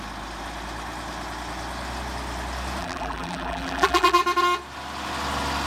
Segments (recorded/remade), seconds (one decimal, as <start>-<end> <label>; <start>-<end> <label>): 0.0-2.8 recorded; 2.8-4.2 remade; 4.2-5.7 recorded